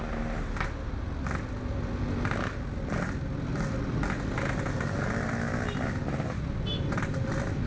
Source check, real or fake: real